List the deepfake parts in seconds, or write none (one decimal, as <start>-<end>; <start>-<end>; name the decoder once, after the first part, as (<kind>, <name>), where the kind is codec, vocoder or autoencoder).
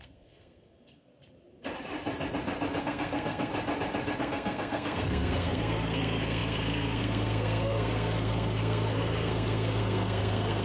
0.0-1.1 (codec, SNAC); 2.8-3.5; 4.2-10.6